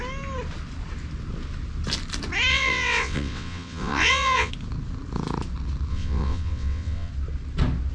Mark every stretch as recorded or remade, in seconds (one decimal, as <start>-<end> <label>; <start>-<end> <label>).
0.0-2.5 recorded; 2.5-4.5 remade; 4.5-5.9 recorded; 5.9-7.1 remade; 7.1-7.9 recorded